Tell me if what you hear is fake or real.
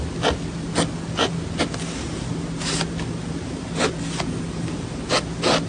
real